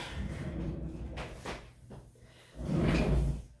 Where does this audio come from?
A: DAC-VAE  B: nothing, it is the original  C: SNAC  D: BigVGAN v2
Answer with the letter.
B